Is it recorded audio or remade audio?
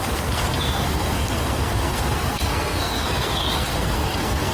remade